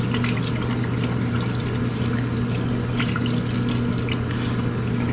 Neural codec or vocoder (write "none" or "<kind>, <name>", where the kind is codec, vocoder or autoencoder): none